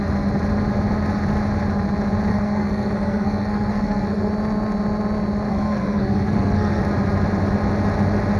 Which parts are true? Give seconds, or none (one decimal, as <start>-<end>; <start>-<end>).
0.0-2.3; 4.3-5.5; 6.8-8.4